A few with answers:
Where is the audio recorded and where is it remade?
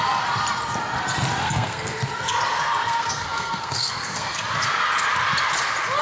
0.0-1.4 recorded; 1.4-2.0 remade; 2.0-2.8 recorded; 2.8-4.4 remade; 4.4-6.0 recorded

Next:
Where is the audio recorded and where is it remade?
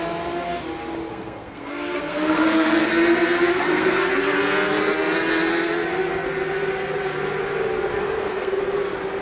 0.0-1.1 recorded; 1.1-2.9 remade; 2.9-3.5 recorded; 3.5-4.1 remade; 4.1-8.0 recorded; 8.0-8.6 remade; 8.6-9.2 recorded